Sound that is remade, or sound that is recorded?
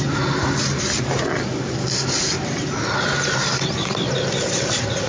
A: recorded